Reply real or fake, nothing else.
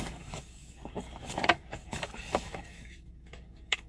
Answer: fake